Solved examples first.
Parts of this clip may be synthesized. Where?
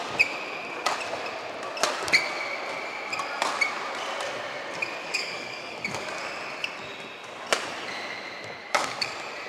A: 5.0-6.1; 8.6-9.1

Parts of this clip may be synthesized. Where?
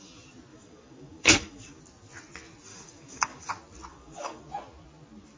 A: 0.5-1.8; 2.7-3.5; 3.9-4.4